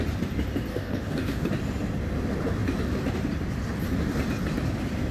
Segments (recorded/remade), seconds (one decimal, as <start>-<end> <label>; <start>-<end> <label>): 0.0-0.7 recorded; 0.7-1.5 remade; 1.5-5.1 recorded